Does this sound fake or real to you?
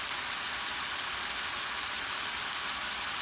real